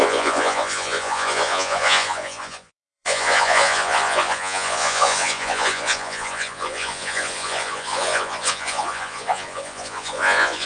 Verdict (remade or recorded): remade